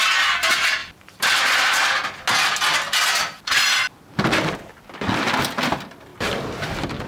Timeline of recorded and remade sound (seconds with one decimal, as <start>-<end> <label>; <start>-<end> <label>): 0.0-0.8 recorded; 0.8-1.4 remade; 1.4-6.1 recorded; 6.1-7.1 remade

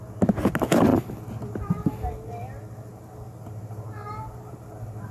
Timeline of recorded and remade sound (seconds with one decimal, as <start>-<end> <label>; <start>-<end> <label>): 0.0-5.1 recorded

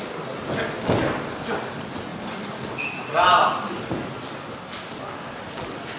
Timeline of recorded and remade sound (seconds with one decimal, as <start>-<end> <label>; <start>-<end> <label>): 0.0-6.0 recorded

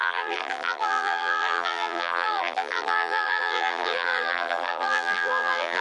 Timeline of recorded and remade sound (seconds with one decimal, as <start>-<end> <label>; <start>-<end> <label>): 0.0-5.8 remade

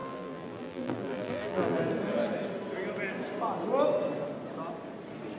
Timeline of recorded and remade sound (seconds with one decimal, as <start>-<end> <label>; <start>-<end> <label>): 0.0-1.8 remade; 1.8-5.4 recorded